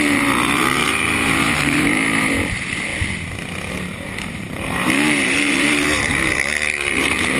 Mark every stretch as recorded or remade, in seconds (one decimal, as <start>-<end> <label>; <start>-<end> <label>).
0.0-2.9 remade; 2.9-3.7 recorded; 3.7-7.4 remade